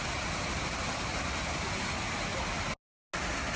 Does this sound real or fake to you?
real